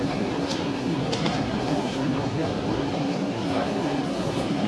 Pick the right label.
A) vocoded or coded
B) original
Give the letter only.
A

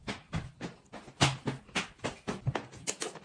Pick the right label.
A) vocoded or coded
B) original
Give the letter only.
B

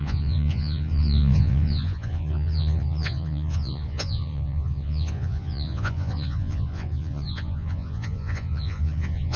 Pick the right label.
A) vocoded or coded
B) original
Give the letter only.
A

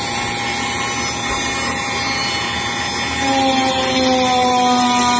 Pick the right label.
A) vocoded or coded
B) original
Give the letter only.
B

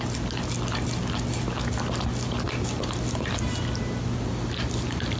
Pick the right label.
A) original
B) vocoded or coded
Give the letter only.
A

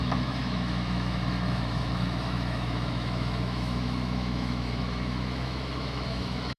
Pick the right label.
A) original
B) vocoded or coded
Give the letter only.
B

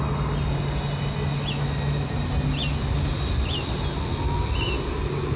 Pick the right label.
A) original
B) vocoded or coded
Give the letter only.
A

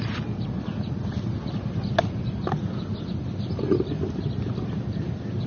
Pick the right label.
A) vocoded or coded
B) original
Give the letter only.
B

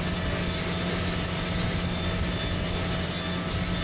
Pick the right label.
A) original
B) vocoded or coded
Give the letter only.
A